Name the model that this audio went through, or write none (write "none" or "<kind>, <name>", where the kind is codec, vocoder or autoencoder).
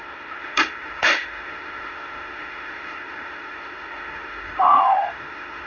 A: autoencoder, DAC-VAE